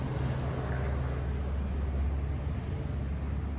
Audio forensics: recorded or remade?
recorded